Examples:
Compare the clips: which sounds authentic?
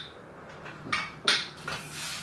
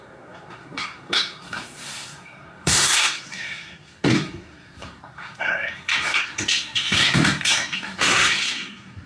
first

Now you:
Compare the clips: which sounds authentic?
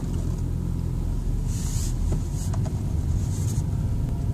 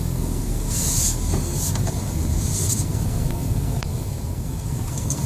first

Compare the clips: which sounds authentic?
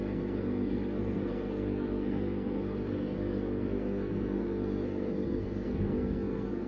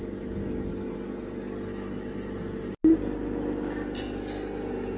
second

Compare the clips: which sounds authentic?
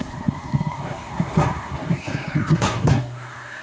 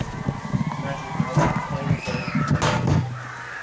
second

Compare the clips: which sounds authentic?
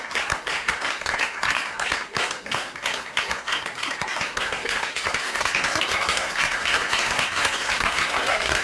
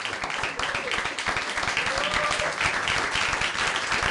second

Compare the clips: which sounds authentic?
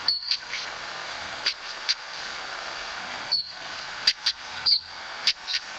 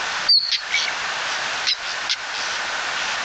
second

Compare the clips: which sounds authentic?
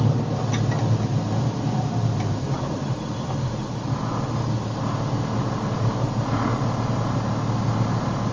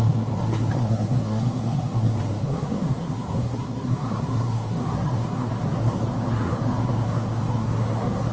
first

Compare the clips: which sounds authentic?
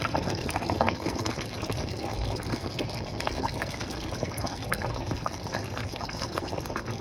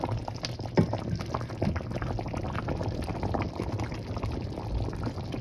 second